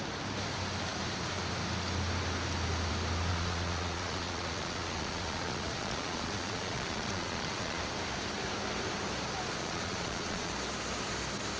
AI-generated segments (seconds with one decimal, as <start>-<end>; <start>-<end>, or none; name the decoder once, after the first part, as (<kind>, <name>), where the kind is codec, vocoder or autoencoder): 3.3-7.8 (vocoder, Vocos); 9.6-10.5